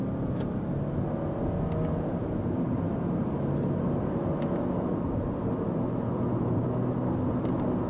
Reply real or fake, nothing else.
real